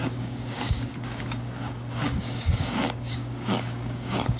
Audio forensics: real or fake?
fake